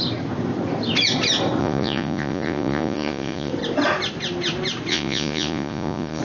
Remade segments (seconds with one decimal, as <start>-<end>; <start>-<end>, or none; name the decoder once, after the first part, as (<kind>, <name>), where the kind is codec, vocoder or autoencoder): 1.6-3.5 (vocoder, Vocos); 4.9-6.2